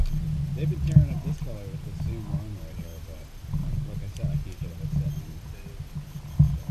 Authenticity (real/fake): real